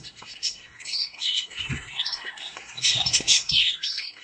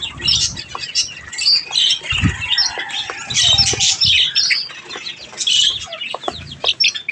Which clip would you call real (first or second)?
second